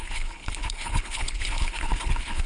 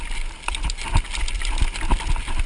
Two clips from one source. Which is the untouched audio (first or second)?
second